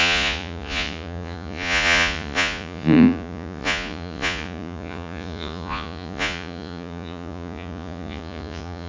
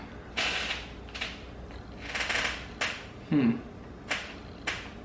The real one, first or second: second